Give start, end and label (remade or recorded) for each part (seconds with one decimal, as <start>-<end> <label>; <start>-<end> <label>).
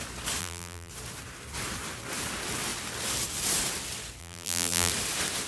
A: 0.0-0.4 recorded; 0.4-0.9 remade; 0.9-4.2 recorded; 4.2-4.9 remade; 4.9-5.5 recorded